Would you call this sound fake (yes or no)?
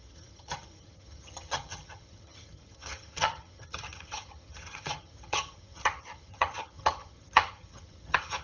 yes